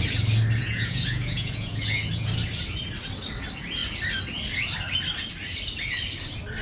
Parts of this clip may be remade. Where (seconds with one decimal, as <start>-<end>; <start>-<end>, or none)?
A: 0.6-2.3